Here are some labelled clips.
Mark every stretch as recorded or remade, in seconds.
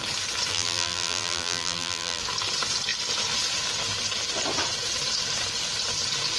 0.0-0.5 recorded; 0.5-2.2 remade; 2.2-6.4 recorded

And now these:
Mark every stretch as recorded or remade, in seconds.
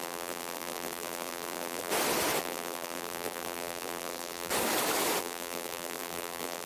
0.0-1.9 remade; 1.9-2.4 recorded; 2.4-4.5 remade; 4.5-5.2 recorded; 5.2-6.7 remade